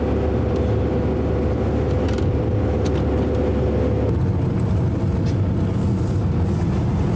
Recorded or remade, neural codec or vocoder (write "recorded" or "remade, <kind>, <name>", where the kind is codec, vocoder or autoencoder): recorded